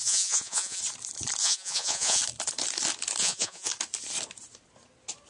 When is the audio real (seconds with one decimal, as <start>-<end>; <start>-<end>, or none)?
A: 0.8-1.4; 2.2-3.2; 3.7-5.3